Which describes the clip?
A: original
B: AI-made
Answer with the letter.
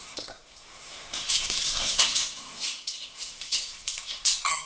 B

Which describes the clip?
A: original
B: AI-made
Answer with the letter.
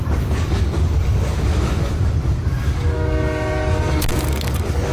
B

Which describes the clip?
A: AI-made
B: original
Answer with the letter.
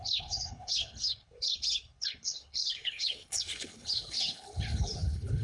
A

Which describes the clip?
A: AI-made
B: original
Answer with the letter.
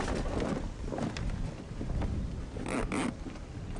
B